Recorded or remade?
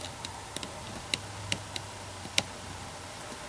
recorded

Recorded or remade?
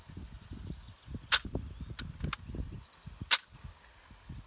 recorded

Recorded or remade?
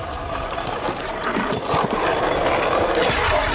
recorded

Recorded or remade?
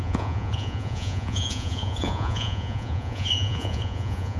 remade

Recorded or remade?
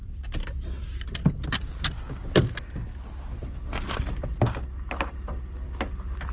recorded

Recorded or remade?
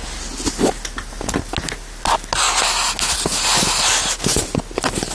recorded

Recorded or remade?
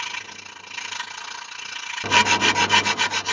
recorded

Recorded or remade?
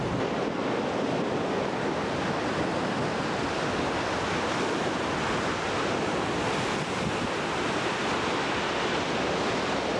recorded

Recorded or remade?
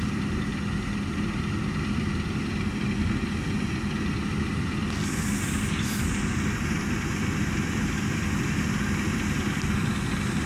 recorded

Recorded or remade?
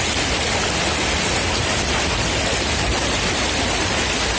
recorded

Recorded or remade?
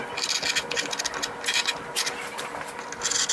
recorded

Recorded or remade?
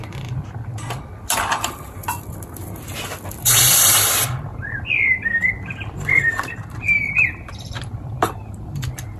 remade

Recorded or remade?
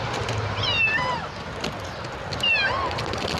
recorded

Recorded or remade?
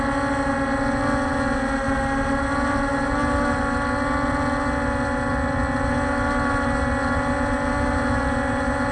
recorded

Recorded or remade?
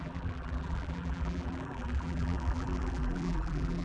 remade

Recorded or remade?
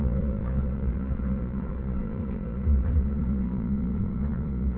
remade